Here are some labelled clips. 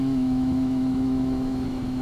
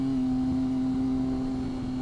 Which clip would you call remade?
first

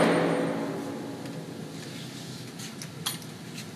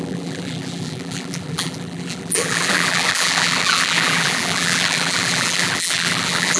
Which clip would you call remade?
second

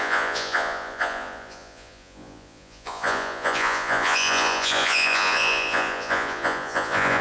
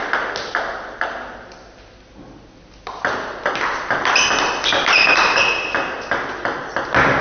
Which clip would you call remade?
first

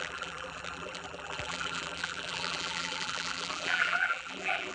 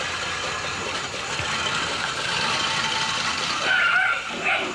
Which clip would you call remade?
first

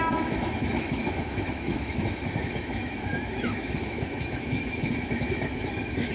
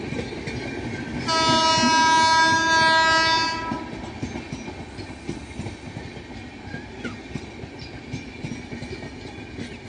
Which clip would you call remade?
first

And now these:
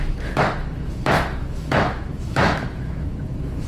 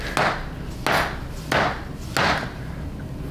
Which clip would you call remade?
first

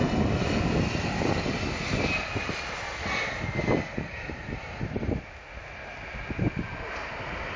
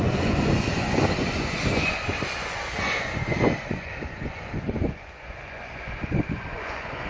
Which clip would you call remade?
second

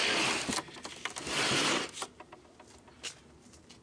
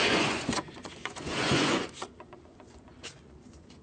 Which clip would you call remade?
second